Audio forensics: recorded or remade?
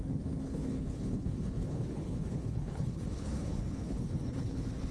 remade